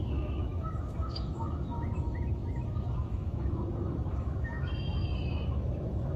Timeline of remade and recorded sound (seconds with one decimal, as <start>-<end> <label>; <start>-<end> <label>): 0.0-6.2 remade